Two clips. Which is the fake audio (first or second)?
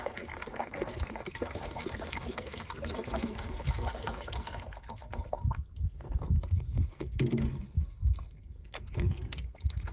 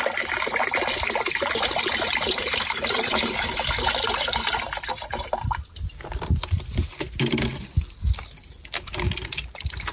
first